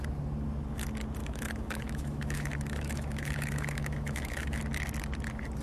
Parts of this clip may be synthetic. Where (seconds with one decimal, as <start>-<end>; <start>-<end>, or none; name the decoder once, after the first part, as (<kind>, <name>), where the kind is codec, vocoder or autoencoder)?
1.2-4.6 (autoencoder, DAC-VAE)